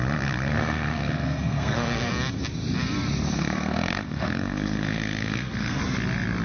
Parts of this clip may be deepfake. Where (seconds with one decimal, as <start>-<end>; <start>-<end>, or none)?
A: 0.5-2.1; 3.4-5.8